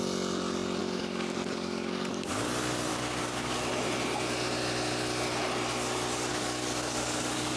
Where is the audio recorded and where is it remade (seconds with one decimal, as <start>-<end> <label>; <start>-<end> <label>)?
0.0-0.8 recorded; 0.8-2.3 remade; 2.3-2.9 recorded; 2.9-3.7 remade; 3.7-6.3 recorded; 6.3-7.6 remade